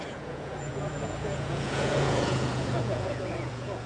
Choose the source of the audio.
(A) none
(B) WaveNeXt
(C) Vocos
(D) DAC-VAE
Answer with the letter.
C